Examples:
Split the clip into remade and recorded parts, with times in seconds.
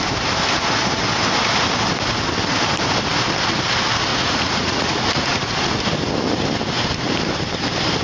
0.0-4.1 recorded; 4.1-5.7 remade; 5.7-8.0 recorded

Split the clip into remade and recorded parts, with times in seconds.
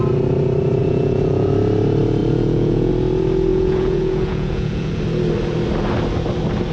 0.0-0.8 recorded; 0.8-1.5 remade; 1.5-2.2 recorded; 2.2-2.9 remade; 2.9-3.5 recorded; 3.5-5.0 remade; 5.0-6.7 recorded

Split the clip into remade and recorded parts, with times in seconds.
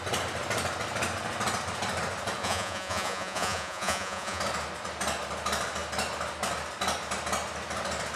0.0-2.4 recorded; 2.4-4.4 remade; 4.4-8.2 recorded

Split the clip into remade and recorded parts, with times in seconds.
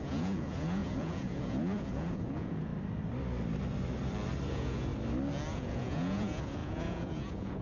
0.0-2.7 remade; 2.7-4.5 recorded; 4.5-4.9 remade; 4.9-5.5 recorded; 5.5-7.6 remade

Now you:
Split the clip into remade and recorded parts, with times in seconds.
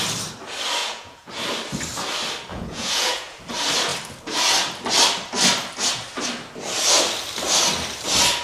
0.0-0.8 recorded; 0.8-1.3 remade; 1.3-2.5 recorded; 2.5-3.4 remade; 3.4-8.4 recorded